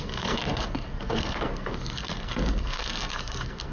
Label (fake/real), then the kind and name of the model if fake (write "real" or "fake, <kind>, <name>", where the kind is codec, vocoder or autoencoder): fake, codec, SNAC